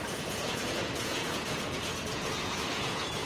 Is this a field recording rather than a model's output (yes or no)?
no